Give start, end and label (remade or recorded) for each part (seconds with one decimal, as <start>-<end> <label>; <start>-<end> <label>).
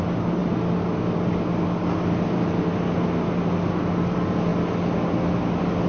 0.0-5.9 recorded